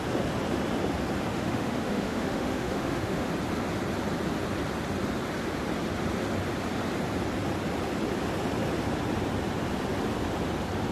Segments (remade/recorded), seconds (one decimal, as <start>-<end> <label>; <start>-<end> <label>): 0.0-1.3 recorded; 1.3-3.3 remade; 3.3-10.9 recorded